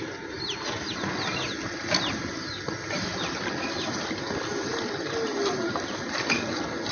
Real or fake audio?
real